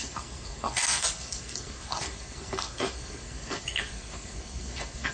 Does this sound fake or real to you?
fake